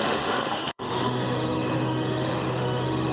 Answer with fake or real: fake